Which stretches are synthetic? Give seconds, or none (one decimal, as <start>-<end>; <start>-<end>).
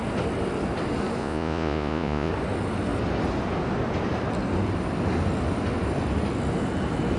1.2-2.3